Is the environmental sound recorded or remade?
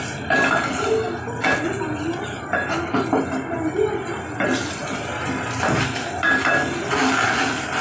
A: recorded